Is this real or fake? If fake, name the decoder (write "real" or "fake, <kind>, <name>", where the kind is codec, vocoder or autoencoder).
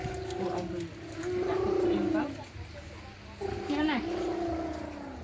real